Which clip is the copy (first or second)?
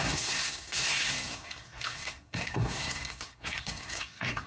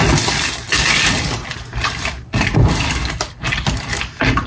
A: first